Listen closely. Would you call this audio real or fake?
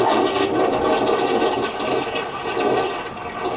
real